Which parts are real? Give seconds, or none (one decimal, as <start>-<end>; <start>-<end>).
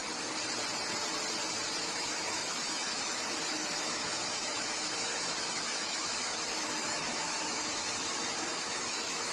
0.0-1.8